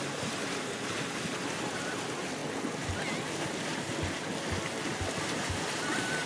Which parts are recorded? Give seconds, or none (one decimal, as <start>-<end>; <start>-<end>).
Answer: 2.4-6.3